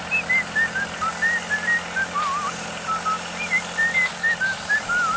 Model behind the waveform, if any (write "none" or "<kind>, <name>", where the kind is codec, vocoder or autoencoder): none